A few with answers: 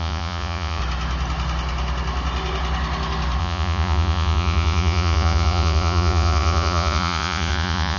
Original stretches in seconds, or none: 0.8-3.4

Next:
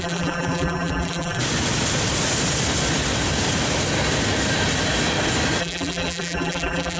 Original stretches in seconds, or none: 1.4-5.6

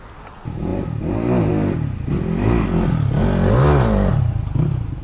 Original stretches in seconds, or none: 0.0-5.0

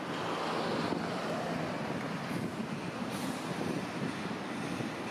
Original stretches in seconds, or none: 0.0-5.1

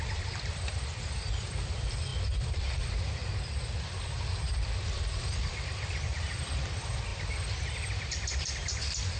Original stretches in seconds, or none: 3.2-3.8